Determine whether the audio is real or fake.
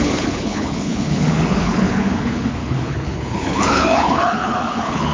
fake